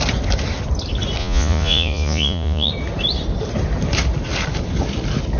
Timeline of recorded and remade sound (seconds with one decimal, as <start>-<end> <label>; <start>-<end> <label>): 0.0-1.2 recorded; 1.2-2.7 remade; 2.7-5.4 recorded